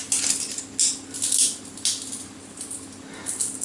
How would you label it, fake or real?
real